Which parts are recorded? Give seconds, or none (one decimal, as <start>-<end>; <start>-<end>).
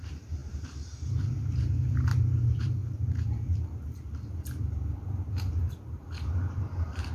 none